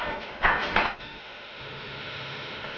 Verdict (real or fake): fake